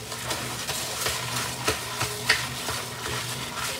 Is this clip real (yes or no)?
yes